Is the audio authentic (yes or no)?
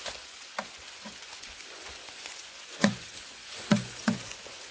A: no